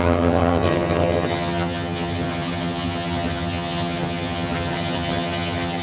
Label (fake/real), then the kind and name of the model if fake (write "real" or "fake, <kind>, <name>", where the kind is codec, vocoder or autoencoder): fake, vocoder, HiFi-GAN